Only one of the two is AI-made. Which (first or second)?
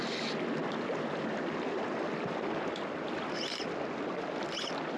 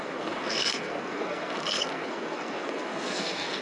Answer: second